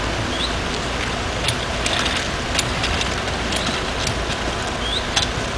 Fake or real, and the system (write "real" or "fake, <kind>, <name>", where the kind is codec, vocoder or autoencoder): real